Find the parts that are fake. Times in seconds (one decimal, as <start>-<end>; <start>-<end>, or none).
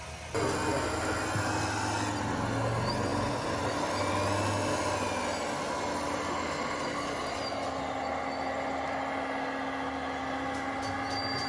none